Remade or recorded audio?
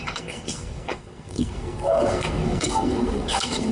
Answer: remade